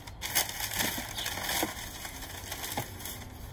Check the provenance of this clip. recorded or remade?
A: recorded